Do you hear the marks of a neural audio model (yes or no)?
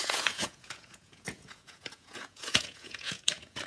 yes